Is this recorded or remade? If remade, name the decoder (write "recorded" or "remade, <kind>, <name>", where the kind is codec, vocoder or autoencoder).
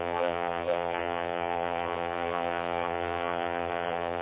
remade, vocoder, BigVGAN v2